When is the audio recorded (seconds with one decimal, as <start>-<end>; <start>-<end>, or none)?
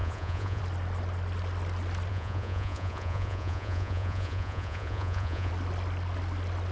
0.6-2.1; 5.5-6.7